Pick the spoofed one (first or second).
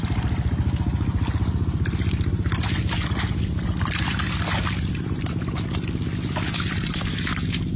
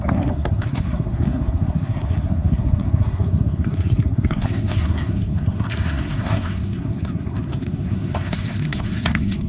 second